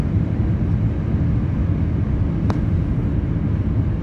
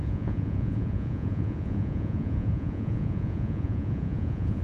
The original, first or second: first